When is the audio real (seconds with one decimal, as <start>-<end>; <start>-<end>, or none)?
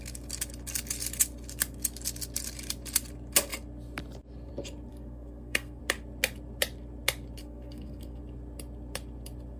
0.0-4.9; 5.8-7.4; 8.2-9.6